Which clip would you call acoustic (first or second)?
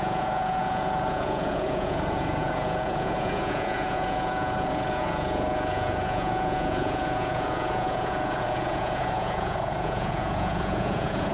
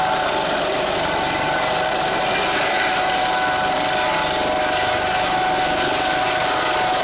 second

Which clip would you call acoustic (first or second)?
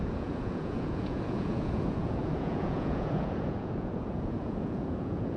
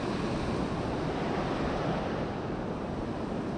second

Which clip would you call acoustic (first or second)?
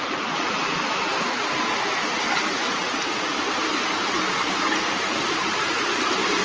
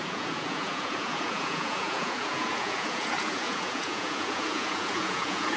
first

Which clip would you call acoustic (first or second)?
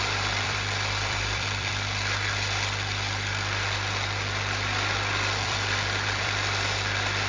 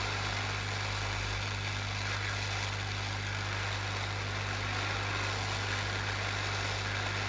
second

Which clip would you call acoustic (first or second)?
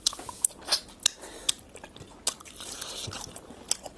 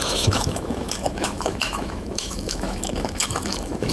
first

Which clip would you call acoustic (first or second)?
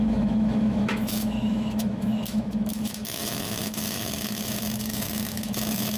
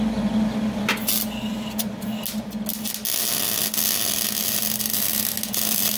second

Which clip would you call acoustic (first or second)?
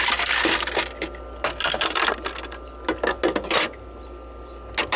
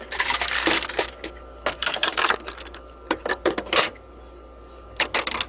first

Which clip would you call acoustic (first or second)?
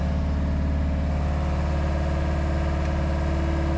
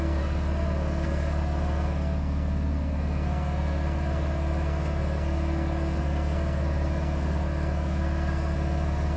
first